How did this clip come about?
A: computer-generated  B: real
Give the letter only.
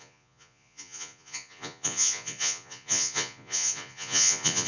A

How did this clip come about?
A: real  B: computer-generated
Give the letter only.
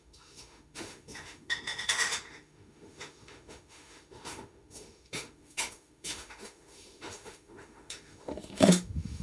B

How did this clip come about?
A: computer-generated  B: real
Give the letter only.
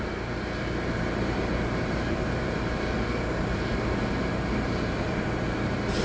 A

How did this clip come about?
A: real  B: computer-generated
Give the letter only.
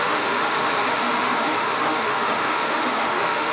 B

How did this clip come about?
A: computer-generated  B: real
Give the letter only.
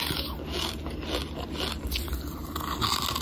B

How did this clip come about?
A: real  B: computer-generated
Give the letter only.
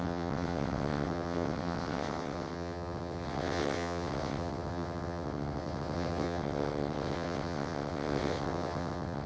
B